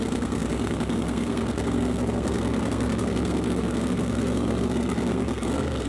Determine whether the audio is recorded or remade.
remade